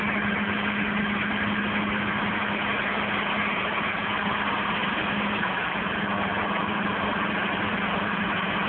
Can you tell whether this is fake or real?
real